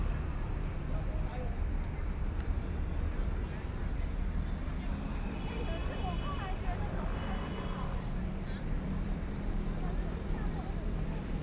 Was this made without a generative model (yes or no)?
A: yes